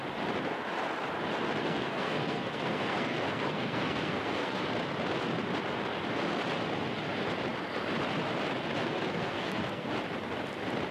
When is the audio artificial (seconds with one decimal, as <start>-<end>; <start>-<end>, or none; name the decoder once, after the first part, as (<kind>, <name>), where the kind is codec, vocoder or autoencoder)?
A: 1.6-4.6 (codec, SNAC); 8.8-9.9